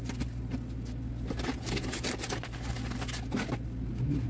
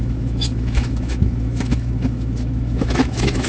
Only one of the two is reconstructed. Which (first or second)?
second